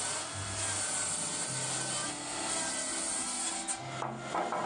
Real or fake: real